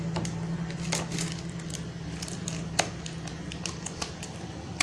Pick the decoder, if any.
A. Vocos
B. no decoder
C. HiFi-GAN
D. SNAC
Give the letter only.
B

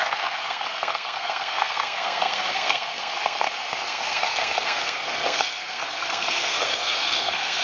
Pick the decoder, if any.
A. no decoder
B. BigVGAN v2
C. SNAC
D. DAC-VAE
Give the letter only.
C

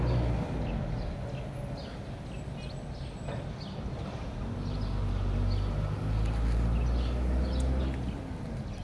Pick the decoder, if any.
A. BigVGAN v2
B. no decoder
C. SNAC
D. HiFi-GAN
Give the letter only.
B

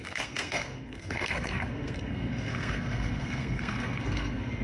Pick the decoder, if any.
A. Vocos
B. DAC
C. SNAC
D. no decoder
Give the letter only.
C